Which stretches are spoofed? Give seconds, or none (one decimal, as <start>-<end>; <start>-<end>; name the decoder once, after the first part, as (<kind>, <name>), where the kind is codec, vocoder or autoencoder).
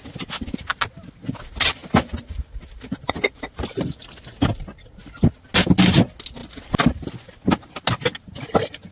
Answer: none